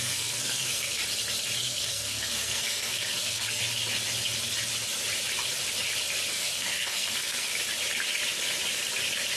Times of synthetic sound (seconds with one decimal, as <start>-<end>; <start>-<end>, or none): 0.0-1.0; 1.6-3.6; 6.3-7.5